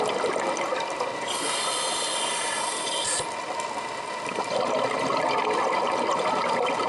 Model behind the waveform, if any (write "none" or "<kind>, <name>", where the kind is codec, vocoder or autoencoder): none